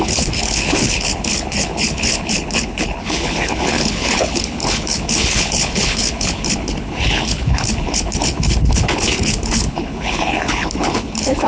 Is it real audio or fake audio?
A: fake